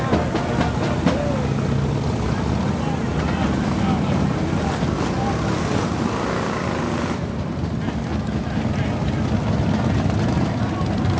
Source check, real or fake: real